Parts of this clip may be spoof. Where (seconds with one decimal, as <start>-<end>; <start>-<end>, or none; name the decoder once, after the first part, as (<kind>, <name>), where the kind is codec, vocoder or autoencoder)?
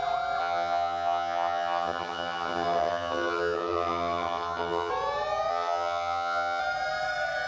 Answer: 0.4-4.9 (vocoder, HiFi-GAN); 5.5-6.6